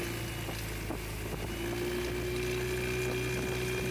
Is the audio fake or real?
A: real